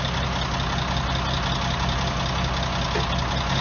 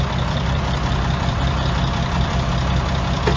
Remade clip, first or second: second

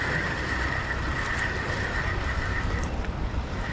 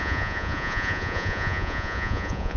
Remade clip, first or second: second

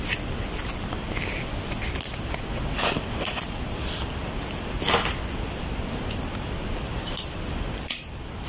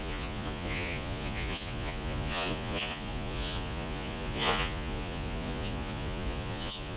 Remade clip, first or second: second